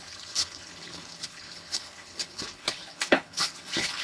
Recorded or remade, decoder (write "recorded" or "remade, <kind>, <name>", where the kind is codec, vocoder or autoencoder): remade, codec, HILCodec